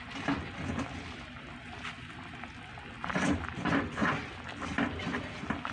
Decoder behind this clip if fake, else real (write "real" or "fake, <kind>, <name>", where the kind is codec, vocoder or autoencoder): real